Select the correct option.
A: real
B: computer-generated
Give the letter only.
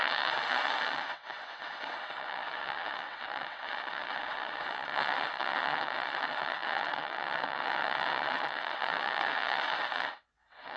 B